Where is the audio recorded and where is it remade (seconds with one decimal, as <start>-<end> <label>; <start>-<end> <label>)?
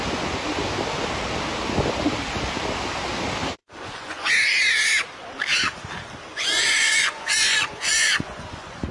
0.0-3.6 recorded; 3.6-4.3 remade; 4.3-6.3 recorded; 6.3-8.9 remade